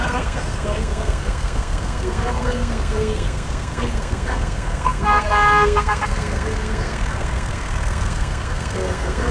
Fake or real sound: fake